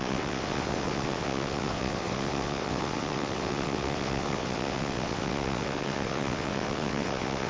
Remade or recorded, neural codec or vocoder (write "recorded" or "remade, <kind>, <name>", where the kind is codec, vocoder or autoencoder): remade, vocoder, WaveNeXt